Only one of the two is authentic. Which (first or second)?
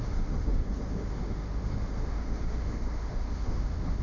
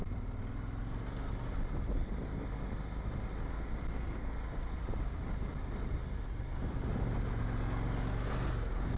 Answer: second